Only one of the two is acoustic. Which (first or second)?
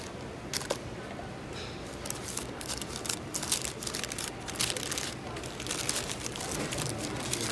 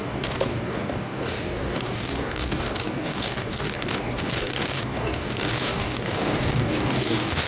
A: first